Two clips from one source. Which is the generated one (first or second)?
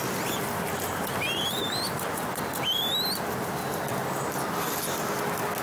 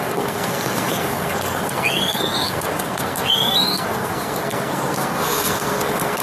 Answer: second